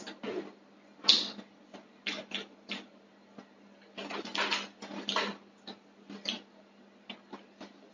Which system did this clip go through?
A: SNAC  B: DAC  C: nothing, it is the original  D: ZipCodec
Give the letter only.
C